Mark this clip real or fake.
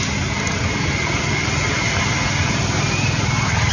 real